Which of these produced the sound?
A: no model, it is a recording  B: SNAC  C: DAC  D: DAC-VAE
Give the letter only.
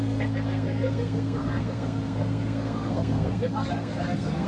B